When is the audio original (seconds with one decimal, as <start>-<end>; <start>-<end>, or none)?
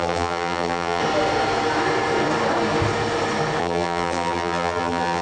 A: 1.0-3.6